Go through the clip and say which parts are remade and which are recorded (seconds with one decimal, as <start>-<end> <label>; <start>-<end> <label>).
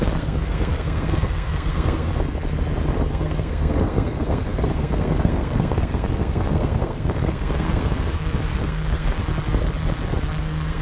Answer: 0.0-2.1 remade; 2.1-3.1 recorded; 3.1-9.2 remade; 9.2-10.4 recorded; 10.4-10.8 remade